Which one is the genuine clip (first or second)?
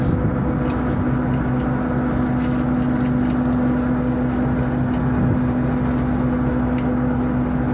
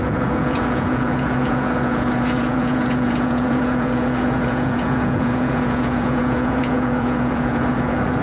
first